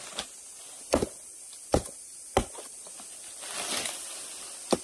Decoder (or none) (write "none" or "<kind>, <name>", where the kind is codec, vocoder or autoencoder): none